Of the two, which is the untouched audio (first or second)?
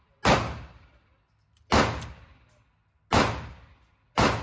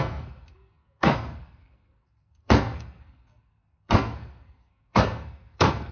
first